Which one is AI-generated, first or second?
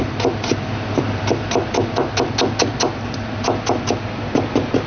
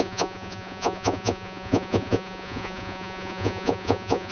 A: second